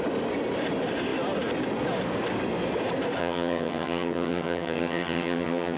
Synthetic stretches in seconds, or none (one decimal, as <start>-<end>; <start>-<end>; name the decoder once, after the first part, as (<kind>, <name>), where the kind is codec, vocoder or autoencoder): 3.2-5.8 (vocoder, HiFi-GAN)